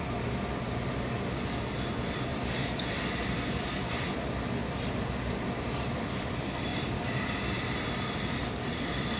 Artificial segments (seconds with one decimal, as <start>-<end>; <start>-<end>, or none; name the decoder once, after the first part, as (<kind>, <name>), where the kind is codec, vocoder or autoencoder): 2.3-3.5 (vocoder, BigVGAN v2); 6.7-8.3